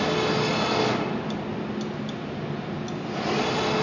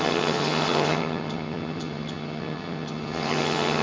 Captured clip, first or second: first